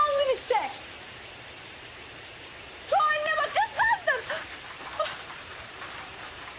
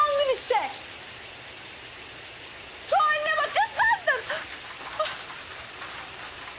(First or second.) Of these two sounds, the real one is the second